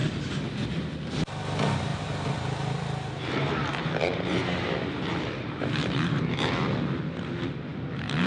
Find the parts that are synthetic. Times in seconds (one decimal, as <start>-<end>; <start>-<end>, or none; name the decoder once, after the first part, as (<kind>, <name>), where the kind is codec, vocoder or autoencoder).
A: 1.9-6.5 (vocoder, BigVGAN v2)